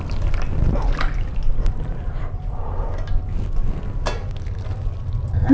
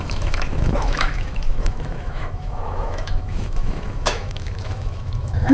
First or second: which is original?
first